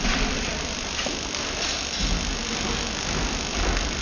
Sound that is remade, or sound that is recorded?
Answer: recorded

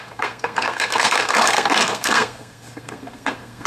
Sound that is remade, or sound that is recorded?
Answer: remade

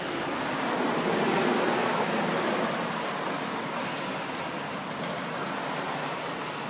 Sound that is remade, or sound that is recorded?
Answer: recorded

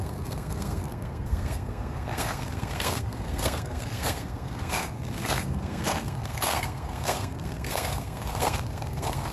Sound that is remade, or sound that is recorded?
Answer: remade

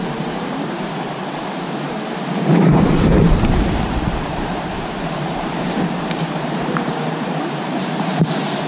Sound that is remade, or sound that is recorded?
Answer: remade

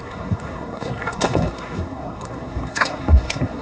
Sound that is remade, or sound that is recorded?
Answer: remade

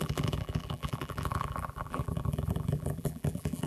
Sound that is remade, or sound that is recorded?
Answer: remade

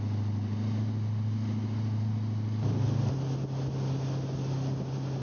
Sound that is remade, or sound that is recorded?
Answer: recorded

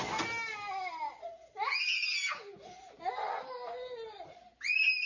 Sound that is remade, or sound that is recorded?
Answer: recorded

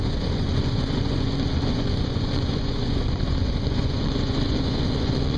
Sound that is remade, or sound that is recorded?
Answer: remade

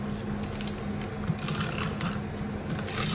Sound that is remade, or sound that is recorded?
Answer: recorded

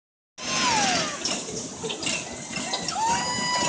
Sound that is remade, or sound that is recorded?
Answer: recorded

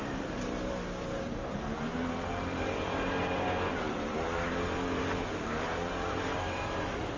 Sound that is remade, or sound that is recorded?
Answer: remade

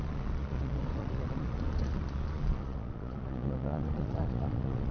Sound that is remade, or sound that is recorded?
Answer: remade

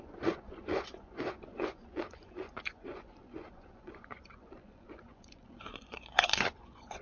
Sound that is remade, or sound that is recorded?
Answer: remade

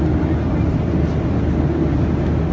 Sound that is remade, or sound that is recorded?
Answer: recorded